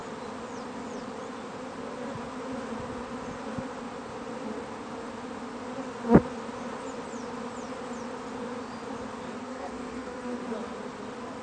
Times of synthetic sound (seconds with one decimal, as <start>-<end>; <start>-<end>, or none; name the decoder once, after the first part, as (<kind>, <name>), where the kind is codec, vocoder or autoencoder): 9.4-10.4 (codec, SNAC)